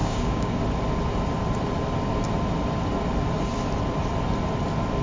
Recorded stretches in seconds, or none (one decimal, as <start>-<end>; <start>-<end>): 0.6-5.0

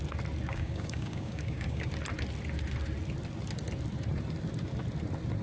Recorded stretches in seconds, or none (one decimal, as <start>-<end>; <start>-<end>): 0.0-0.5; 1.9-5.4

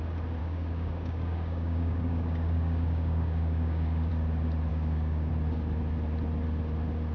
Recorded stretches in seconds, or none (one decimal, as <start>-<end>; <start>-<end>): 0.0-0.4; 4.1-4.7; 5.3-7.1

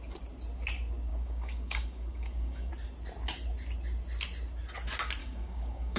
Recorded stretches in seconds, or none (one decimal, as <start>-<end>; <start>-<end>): 0.0-1.1; 2.7-5.2

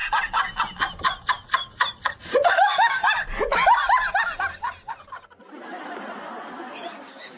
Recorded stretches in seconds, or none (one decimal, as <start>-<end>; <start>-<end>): 0.0-2.5; 3.0-7.0

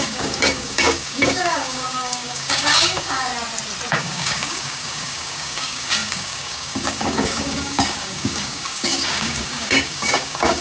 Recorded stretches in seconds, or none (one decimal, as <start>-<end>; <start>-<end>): 3.3-3.9

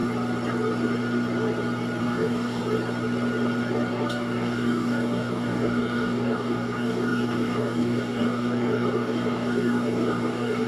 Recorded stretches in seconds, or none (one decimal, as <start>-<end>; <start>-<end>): 0.0-2.0; 2.6-3.9

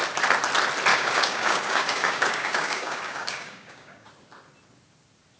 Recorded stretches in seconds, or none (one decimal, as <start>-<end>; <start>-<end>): 0.0-0.9; 4.1-5.4